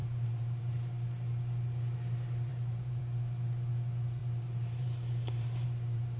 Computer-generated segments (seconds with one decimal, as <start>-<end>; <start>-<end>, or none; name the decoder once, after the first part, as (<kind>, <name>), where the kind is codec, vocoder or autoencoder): 0.0-0.6 (vocoder, BigVGAN v2); 2.5-3.0; 4.2-6.2